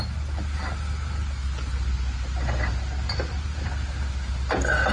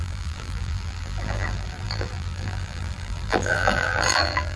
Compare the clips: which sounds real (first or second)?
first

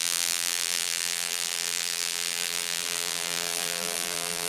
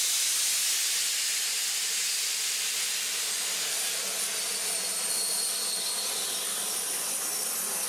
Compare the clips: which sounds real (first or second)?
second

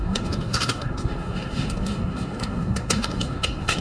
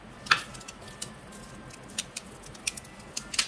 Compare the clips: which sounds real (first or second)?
second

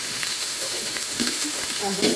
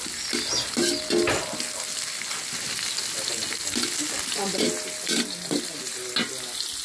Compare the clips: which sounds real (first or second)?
second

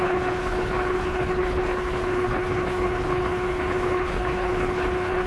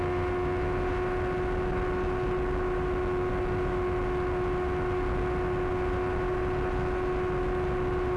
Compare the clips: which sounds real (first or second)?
second